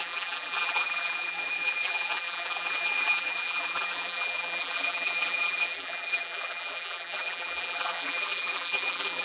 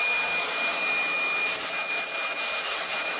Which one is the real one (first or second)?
second